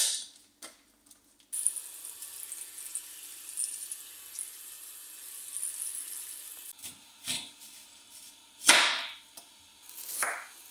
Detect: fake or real real